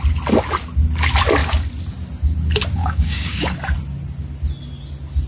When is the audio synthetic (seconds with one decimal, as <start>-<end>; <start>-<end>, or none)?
2.8-3.4